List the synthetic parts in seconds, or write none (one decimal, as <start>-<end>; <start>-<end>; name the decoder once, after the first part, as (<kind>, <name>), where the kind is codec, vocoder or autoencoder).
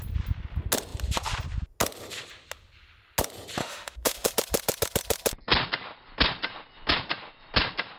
3.6-4.3 (autoencoder, DAC-VAE)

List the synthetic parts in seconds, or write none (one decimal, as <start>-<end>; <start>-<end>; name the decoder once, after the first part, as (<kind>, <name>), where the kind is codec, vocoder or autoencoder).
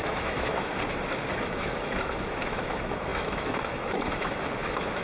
0.0-0.7 (autoencoder, DAC-VAE); 1.5-5.0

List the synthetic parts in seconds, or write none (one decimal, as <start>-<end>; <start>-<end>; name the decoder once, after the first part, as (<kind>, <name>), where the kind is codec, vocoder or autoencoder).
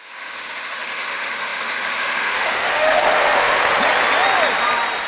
0.0-3.6 (autoencoder, DAC-VAE)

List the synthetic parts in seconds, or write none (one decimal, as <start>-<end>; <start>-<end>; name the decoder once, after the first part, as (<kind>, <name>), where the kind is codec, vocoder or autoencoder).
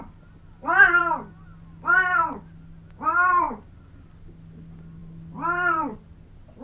none